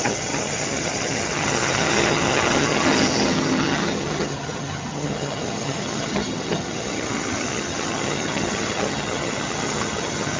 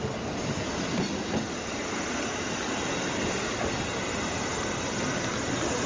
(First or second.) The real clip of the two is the second